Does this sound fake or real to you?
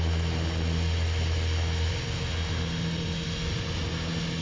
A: real